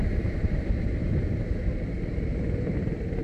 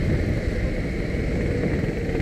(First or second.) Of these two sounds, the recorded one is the second